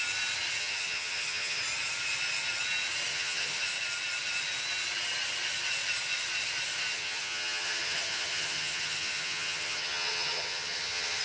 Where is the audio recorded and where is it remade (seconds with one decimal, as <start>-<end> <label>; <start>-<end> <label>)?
0.0-0.6 recorded; 0.6-1.6 remade; 1.6-3.1 recorded; 3.1-3.6 remade; 3.6-6.9 recorded; 6.9-11.2 remade